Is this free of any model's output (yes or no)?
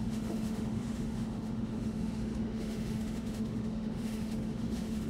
no